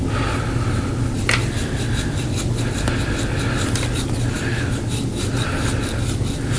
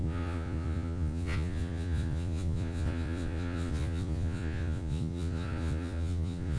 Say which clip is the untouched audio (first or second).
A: first